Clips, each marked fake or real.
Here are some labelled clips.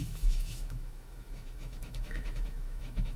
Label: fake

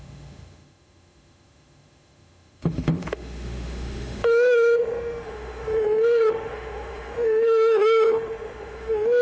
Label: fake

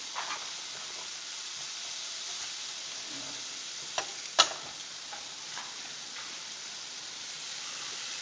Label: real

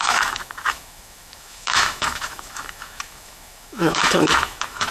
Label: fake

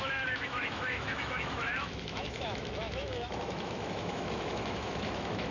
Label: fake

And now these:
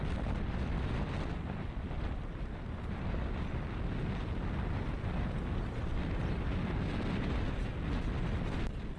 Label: real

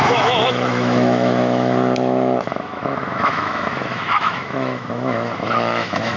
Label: fake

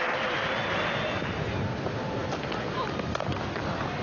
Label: real